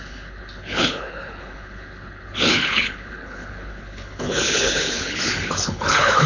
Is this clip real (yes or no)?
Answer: no